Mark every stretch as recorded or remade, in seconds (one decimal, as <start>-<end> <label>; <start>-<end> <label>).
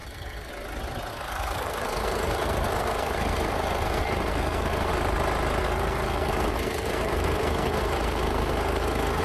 0.0-0.5 remade; 0.5-1.1 recorded; 1.1-4.9 remade; 4.9-5.6 recorded; 5.6-9.2 remade